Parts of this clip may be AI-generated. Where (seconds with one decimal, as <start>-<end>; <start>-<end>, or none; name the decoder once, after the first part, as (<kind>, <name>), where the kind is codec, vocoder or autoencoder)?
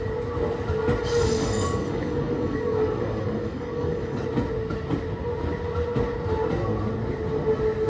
1.0-4.2 (codec, DAC)